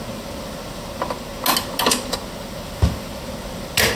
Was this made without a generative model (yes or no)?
yes